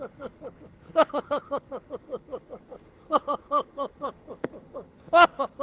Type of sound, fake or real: fake